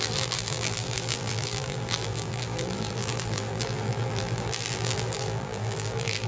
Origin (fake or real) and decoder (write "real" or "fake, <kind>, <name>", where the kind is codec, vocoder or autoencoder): fake, vocoder, BigVGAN v2